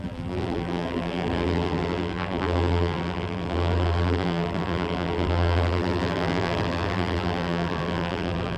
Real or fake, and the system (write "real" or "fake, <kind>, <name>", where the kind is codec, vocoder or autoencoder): fake, vocoder, BigVGAN v2